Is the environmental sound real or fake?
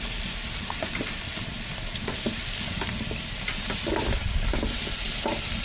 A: real